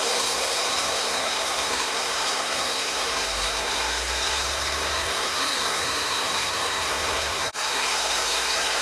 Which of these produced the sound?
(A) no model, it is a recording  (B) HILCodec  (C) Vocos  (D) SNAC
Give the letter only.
D